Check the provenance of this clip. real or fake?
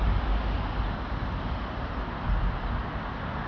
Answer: real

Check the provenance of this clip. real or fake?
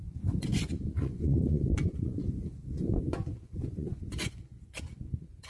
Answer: fake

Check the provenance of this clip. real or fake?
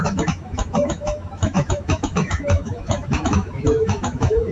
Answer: fake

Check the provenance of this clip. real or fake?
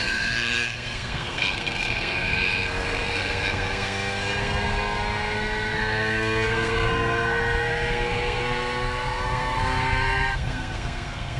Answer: fake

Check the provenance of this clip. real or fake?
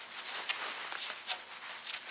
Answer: real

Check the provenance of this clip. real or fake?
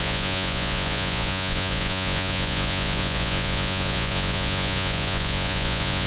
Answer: fake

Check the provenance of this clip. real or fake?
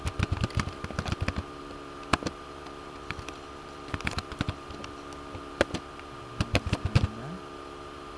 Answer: real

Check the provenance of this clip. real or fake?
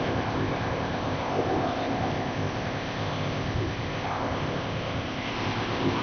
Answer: fake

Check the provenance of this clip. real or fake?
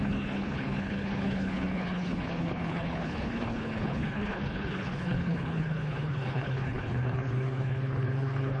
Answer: fake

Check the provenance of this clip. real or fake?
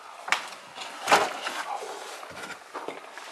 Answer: real